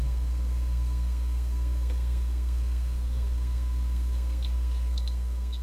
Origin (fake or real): fake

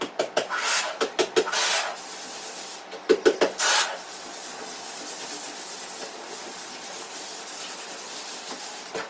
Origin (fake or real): real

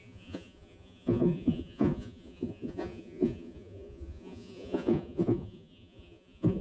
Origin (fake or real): fake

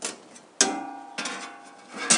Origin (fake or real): real